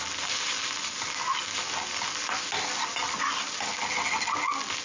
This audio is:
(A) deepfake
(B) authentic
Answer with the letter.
B